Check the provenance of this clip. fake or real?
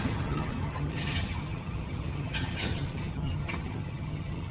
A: fake